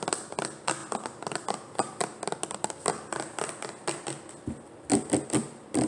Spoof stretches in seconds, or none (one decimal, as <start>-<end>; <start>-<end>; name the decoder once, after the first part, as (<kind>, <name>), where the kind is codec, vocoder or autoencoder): none